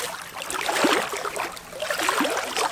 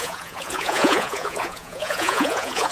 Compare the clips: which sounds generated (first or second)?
second